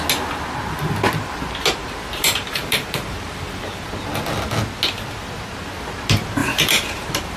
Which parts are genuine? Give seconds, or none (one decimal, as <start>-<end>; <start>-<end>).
0.0-1.8; 3.9-6.4